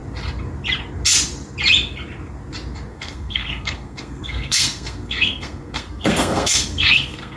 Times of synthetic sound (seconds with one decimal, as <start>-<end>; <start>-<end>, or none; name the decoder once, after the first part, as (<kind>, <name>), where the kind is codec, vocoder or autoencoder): 2.9-7.4 (codec, SNAC)